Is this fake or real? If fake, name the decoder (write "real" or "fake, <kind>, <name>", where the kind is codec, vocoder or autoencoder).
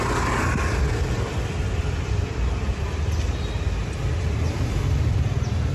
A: real